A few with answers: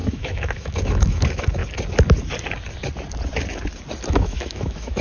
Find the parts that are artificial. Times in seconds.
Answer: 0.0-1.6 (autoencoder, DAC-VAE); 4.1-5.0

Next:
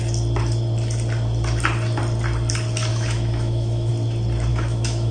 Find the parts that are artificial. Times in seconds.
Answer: 2.9-3.9 (autoencoder, DAC-VAE); 4.5-5.1